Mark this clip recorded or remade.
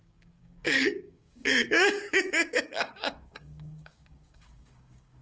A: remade